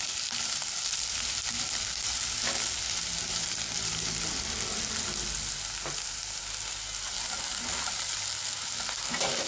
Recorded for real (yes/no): yes